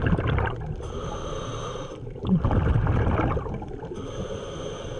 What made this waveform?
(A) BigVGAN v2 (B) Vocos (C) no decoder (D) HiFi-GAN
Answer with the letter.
C